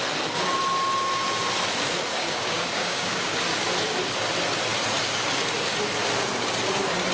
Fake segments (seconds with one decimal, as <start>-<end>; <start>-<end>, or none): 2.1-3.4

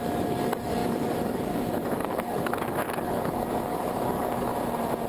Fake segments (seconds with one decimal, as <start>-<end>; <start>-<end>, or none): 0.0-4.5

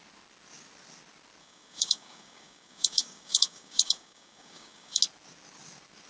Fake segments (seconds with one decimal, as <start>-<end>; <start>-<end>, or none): 1.4-5.0

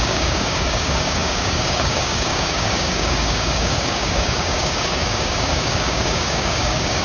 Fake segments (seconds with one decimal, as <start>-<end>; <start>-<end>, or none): 0.0-7.0

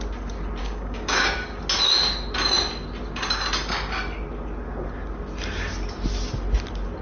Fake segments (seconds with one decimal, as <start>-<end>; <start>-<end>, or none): 0.6-1.6

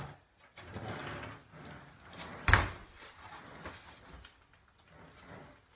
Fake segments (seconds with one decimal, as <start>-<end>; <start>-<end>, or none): none